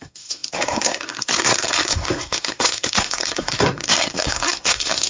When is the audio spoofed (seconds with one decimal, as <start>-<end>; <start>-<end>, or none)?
0.0-5.1